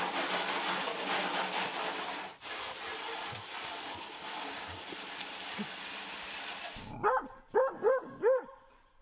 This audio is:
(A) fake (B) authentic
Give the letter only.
B